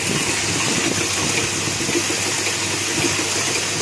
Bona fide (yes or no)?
yes